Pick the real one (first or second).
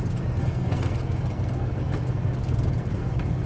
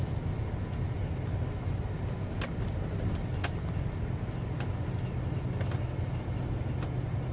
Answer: second